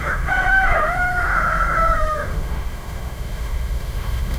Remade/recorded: remade